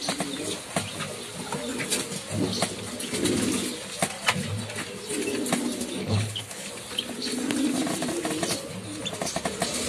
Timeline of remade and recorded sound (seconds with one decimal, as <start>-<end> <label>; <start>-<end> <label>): 0.0-6.0 recorded; 6.0-6.7 remade; 6.7-9.9 recorded